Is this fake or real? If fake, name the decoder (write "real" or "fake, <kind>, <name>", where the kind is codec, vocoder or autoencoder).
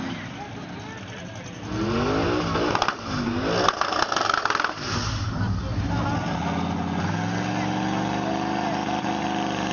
real